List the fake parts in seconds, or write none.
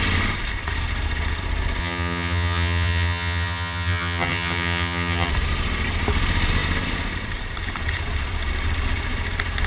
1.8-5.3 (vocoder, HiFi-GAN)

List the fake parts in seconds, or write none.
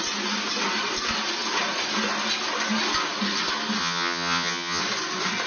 3.8-4.8 (vocoder, HiFi-GAN)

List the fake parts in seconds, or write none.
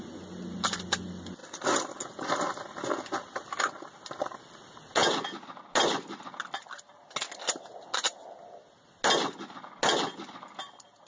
none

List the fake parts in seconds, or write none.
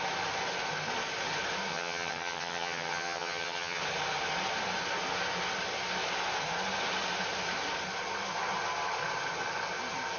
1.7-3.8 (vocoder, HiFi-GAN)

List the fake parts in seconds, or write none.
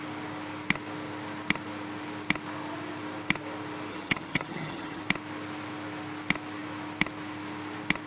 3.9-5.0 (vocoder, HiFi-GAN)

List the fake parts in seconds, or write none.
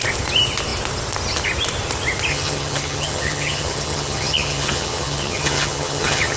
2.3-6.4 (vocoder, HiFi-GAN)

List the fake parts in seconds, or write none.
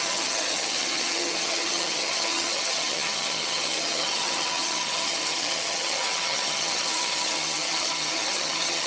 0.0-8.9 (vocoder, HiFi-GAN)